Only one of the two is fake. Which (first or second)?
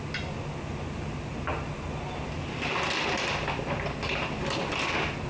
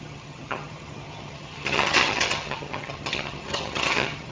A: second